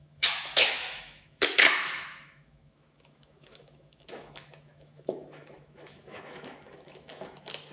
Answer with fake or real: fake